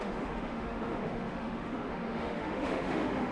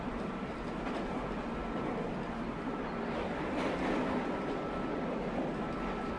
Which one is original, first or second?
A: second